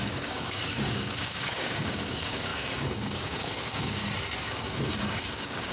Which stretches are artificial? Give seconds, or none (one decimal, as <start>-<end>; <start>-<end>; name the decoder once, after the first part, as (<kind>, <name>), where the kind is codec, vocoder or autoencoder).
0.0-4.0 (codec, DAC); 4.5-5.7

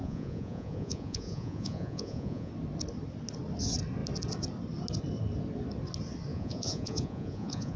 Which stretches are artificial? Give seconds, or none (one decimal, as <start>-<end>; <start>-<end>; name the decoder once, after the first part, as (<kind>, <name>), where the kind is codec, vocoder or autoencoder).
0.0-2.5 (vocoder, Vocos); 6.3-7.8

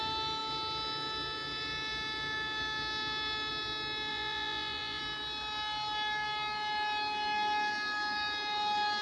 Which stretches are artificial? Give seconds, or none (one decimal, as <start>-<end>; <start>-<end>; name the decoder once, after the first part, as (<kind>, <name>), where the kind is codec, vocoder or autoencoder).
4.1-5.0 (vocoder, Vocos)